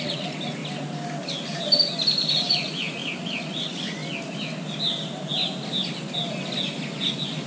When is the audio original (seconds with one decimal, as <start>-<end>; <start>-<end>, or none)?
0.6-2.3; 4.0-7.5